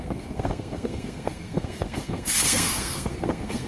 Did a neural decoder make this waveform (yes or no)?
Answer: yes